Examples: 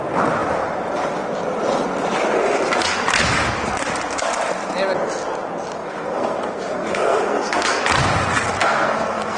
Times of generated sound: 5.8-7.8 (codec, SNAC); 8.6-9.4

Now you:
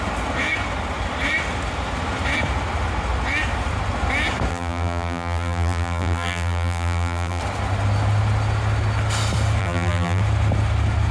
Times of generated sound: 4.5-7.4 (vocoder, BigVGAN v2); 9.6-10.2

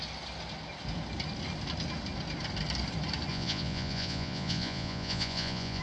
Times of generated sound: 3.3-5.8 (vocoder, Vocos)

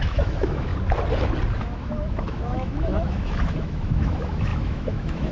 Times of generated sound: 0.0-0.7 (autoencoder, DAC-VAE); 1.6-5.3